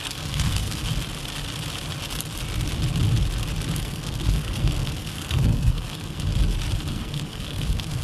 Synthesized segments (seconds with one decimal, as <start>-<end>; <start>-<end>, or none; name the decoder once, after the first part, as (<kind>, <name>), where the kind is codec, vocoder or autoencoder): 0.0-0.8 (codec, SNAC); 3.8-6.3; 6.9-8.0